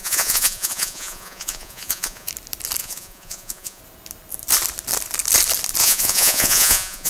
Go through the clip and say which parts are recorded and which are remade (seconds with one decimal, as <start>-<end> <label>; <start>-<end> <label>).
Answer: 0.0-2.3 remade; 2.3-2.8 recorded; 2.8-3.8 remade; 3.8-5.8 recorded; 5.8-7.1 remade